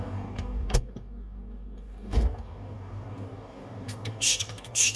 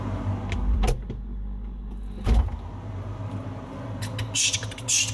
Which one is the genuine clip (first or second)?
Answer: second